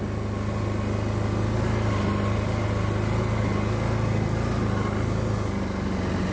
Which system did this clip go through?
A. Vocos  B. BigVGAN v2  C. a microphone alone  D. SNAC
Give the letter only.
C